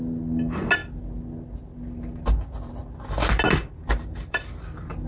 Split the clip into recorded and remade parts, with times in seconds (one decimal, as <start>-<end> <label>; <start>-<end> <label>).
0.0-2.8 recorded; 2.8-5.1 remade